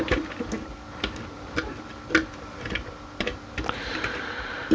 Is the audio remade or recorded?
remade